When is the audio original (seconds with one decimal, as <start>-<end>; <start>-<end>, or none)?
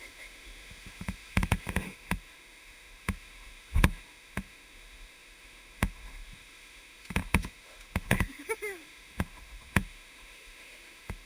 none